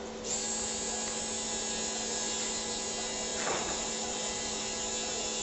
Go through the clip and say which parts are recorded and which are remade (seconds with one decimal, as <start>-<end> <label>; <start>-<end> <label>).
0.0-3.3 recorded; 3.3-4.6 remade; 4.6-5.4 recorded